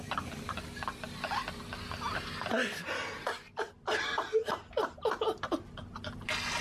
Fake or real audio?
real